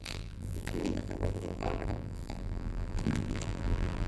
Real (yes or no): no